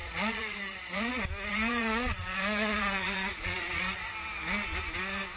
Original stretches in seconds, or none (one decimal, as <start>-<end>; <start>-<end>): 1.1-1.5; 4.1-5.4